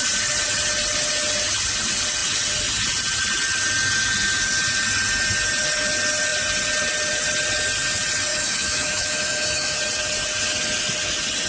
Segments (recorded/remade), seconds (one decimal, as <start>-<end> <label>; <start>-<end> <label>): 0.0-8.3 recorded; 8.3-9.8 remade; 9.8-11.5 recorded